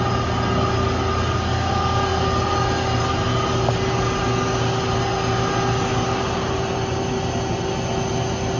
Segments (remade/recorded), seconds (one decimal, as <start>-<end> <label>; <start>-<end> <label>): 0.0-8.6 recorded